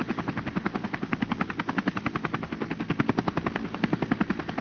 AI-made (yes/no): no